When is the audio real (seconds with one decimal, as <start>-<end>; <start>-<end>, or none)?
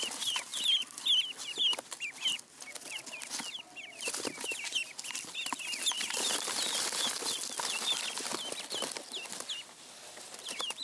0.0-10.8